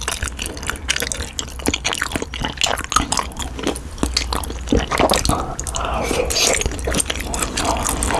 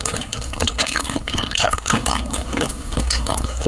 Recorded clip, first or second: first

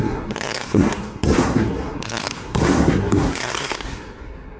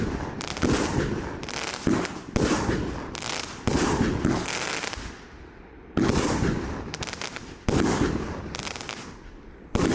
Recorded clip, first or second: second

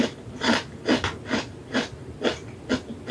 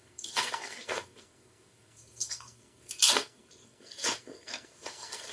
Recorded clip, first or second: first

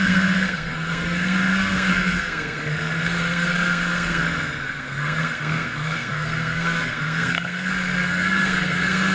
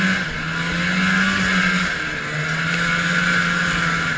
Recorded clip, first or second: second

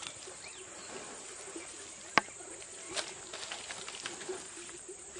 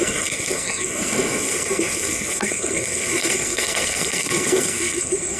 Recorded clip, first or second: first